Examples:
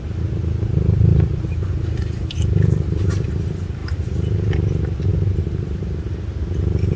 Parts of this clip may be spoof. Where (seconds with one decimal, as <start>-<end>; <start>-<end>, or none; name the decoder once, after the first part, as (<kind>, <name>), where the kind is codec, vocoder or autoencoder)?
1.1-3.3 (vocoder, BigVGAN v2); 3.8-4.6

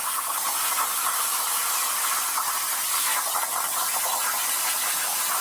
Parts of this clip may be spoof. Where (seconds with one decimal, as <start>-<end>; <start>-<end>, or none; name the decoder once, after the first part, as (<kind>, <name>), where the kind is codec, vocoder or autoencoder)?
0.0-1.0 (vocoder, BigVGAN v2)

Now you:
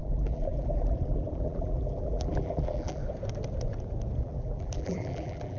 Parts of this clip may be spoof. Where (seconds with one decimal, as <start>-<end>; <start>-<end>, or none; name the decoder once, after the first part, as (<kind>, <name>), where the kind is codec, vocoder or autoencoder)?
0.0-3.0 (vocoder, BigVGAN v2); 4.2-5.6